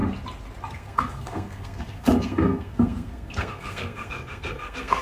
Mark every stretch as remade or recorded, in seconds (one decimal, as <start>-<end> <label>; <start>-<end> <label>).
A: 0.0-0.7 recorded; 0.7-5.0 remade